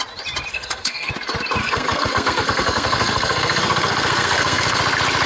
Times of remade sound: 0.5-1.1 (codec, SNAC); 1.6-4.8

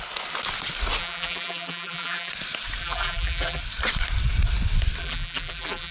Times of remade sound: 1.0-2.3 (vocoder, BigVGAN v2); 2.8-3.6; 5.0-5.9

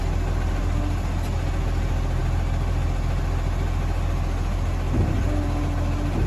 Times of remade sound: none